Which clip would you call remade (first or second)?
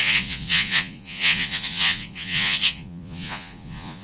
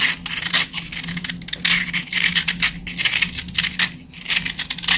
first